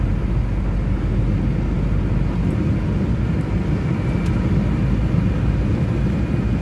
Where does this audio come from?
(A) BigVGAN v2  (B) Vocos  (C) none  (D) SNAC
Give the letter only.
C